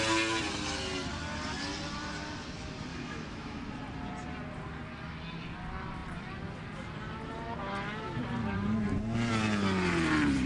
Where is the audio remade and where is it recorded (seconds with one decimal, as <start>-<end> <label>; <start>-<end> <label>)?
0.0-2.9 recorded; 2.9-3.6 remade; 3.6-10.5 recorded